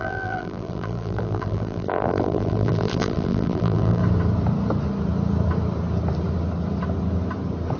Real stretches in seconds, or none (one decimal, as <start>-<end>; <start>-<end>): 4.0-7.8